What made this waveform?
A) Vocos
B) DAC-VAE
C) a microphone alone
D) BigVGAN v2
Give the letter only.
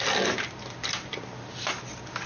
C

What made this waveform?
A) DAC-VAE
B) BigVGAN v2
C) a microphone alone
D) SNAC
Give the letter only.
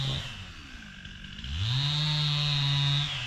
C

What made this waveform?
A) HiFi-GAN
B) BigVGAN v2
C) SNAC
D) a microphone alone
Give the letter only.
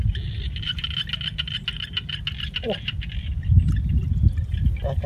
D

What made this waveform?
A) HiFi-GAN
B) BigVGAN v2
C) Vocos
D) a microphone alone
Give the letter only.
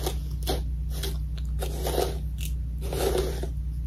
D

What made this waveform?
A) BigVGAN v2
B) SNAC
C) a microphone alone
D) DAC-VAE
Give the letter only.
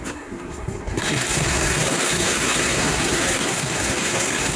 B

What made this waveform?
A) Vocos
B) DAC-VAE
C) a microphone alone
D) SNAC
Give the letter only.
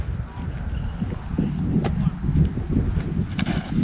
C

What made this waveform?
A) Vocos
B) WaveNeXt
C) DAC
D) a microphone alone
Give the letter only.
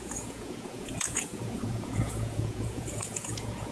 A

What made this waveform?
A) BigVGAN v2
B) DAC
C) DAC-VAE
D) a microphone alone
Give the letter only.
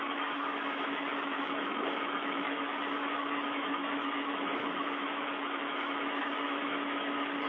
C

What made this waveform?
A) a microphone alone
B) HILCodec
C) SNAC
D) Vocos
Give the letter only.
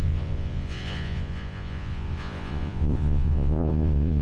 D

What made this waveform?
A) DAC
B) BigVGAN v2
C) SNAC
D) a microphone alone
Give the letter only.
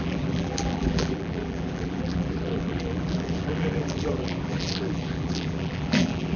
B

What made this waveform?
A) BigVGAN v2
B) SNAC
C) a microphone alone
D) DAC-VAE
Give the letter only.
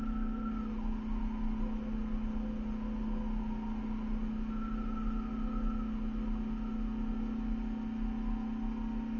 C